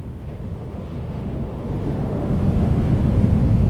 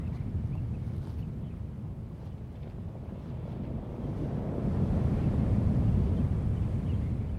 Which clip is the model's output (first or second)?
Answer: first